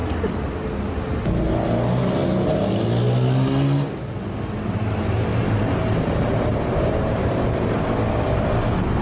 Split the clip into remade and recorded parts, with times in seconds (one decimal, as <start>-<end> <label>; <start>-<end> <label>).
0.0-5.3 recorded; 5.3-7.8 remade; 7.8-9.0 recorded